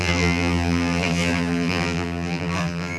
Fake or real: fake